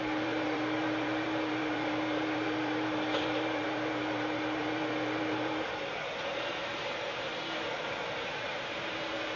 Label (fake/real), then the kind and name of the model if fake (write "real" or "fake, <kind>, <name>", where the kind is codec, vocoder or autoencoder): fake, vocoder, BigVGAN v2